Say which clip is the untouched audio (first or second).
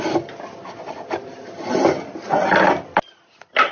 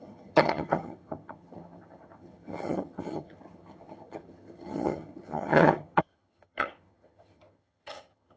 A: first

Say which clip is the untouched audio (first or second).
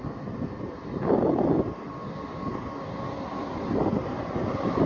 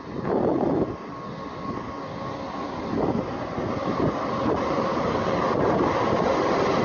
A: second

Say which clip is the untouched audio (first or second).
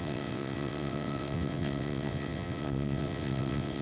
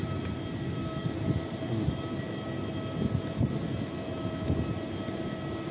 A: second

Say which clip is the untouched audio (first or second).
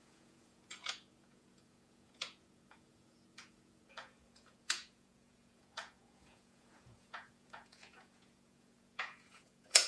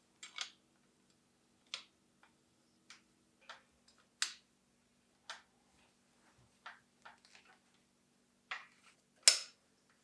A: second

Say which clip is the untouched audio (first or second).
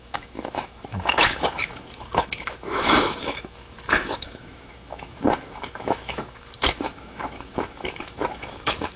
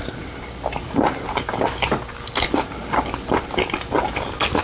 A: second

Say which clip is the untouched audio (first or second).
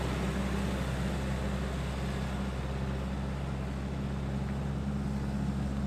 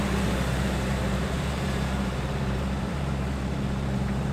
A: first